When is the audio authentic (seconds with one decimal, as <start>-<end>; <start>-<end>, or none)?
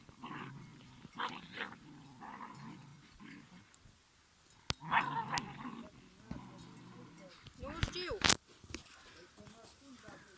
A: 0.0-10.4